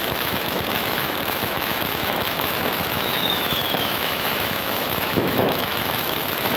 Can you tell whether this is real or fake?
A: fake